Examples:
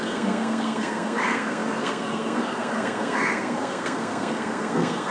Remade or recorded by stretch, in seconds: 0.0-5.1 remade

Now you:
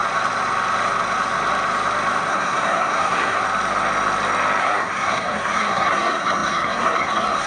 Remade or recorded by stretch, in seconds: 0.0-2.3 recorded; 2.3-3.4 remade; 3.4-4.6 recorded; 4.6-7.5 remade